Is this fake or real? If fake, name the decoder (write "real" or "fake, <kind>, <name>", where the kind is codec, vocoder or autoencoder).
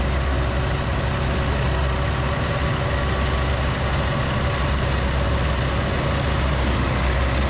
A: real